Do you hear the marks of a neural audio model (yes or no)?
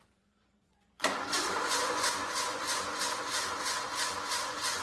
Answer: yes